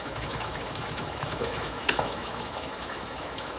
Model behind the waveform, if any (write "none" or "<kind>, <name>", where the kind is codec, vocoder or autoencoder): autoencoder, DAC-VAE